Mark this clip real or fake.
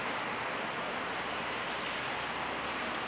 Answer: real